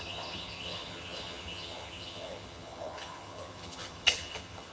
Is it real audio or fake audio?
fake